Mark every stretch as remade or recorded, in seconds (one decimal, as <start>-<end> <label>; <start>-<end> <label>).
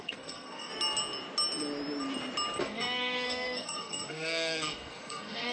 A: 0.0-0.7 remade; 0.7-2.6 recorded; 2.6-5.5 remade